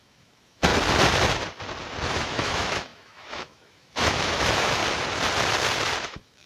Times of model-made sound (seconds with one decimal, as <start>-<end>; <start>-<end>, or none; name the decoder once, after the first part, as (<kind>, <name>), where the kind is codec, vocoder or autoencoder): 0.0-0.7 (autoencoder, DAC-VAE); 2.2-4.8; 6.0-6.5